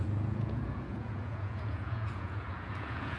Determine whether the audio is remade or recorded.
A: remade